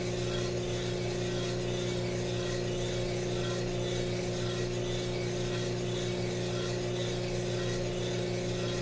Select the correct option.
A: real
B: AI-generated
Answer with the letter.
A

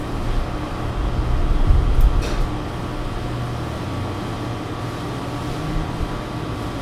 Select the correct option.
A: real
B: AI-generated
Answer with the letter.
A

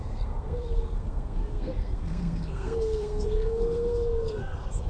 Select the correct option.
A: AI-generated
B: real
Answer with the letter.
A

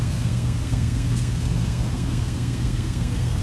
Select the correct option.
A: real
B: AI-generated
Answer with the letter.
B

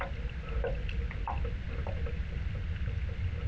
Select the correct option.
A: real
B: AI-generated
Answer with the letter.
A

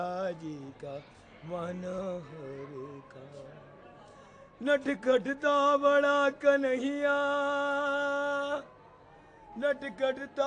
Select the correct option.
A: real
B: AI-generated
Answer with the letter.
A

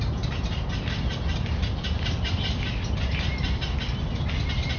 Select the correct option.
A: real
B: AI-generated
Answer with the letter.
A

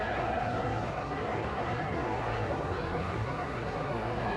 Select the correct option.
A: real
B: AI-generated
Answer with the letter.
B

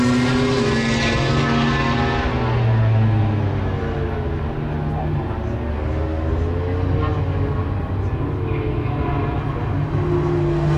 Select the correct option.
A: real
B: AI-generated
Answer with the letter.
A